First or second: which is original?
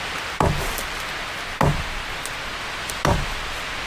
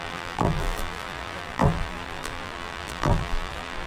first